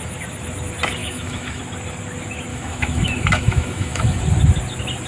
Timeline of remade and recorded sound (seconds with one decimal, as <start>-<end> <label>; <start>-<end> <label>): 0.0-1.0 recorded; 1.0-1.6 remade; 1.6-2.5 recorded; 2.5-4.2 remade; 4.2-5.1 recorded

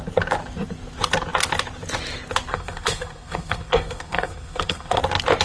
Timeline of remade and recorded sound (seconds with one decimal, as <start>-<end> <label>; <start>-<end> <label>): 0.0-2.5 recorded; 2.5-5.0 remade; 5.0-5.4 recorded

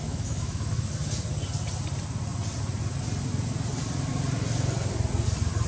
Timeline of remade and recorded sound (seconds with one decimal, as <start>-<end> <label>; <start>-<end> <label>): 0.0-0.9 remade; 0.9-5.7 recorded

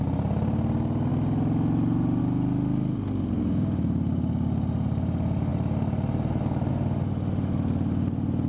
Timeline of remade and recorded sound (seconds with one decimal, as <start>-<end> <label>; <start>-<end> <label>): 0.0-8.5 recorded

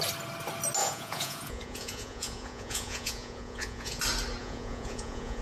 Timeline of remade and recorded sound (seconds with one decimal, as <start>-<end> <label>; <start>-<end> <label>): 0.0-0.8 recorded; 0.8-4.0 remade; 4.0-4.4 recorded; 4.4-5.4 remade

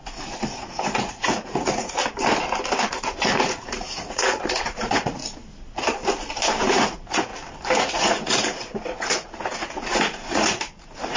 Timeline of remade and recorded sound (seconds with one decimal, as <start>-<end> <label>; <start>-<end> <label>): 0.0-2.0 remade; 2.0-2.9 recorded; 2.9-5.2 remade; 5.2-6.6 recorded; 6.6-7.3 remade; 7.3-7.8 recorded; 7.8-11.2 remade

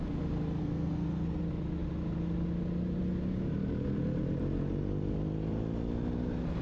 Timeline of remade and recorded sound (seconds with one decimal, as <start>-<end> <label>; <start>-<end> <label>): 0.0-0.6 recorded; 0.6-1.4 remade; 1.4-6.6 recorded